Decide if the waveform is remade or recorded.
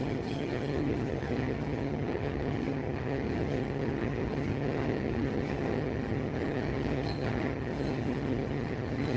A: remade